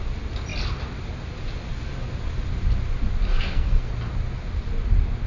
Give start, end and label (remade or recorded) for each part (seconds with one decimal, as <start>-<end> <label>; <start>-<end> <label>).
0.0-3.3 recorded; 3.3-3.9 remade; 3.9-5.3 recorded